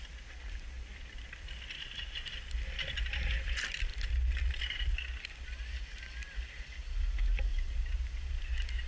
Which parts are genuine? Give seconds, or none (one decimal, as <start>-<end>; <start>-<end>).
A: 0.0-7.5; 8.3-8.9